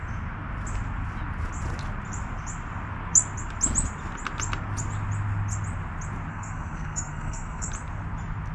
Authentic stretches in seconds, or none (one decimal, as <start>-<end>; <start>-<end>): 0.0-6.3; 7.7-8.5